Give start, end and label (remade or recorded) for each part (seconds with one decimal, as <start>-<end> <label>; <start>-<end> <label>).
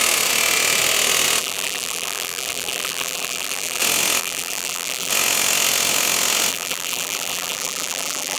0.0-1.4 recorded; 1.4-3.8 remade; 3.8-4.2 recorded; 4.2-5.1 remade; 5.1-6.5 recorded; 6.5-8.4 remade